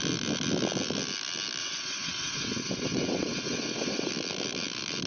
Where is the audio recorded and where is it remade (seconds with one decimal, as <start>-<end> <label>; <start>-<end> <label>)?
0.0-1.6 recorded; 1.6-4.1 remade; 4.1-5.1 recorded